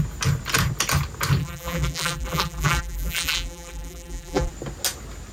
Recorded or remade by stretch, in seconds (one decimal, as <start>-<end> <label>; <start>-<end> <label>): 0.0-1.4 recorded; 1.4-4.5 remade; 4.5-5.3 recorded